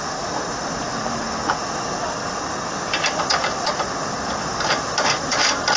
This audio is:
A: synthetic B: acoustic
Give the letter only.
B